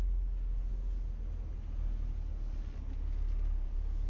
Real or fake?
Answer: real